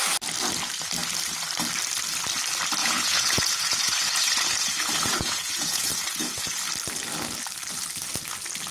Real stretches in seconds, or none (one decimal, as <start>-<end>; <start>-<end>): 0.0-2.8; 6.6-8.7